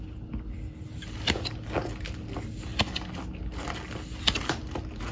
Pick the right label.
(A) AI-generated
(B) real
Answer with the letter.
B